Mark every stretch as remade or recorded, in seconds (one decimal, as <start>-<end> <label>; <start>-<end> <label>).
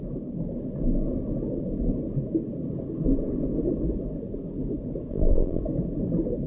0.0-5.1 recorded; 5.1-5.6 remade; 5.6-6.5 recorded